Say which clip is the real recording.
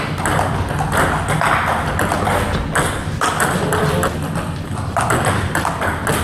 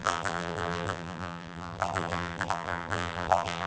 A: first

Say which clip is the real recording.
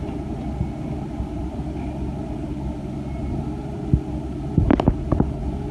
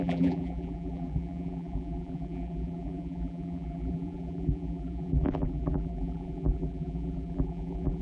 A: first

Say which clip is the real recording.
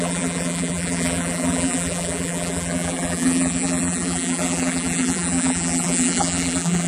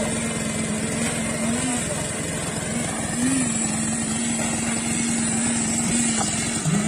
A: second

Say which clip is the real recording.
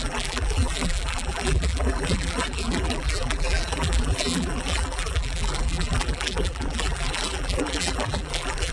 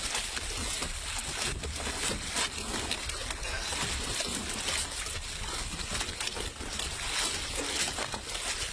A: second